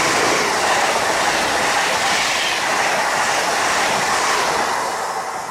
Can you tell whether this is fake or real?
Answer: real